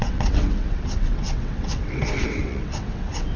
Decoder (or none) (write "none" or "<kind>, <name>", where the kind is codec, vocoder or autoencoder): vocoder, WaveNeXt